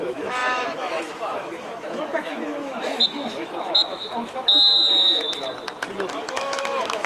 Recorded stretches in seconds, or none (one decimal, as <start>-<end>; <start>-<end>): 5.3-6.1